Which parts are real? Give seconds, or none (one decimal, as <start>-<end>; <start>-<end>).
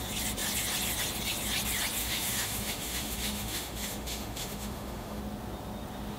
0.0-2.0; 5.2-6.2